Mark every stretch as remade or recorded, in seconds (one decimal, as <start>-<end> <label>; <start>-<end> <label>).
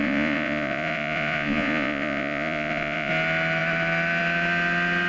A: 0.0-3.1 remade; 3.1-5.1 recorded